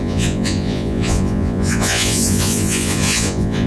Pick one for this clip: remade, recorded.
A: remade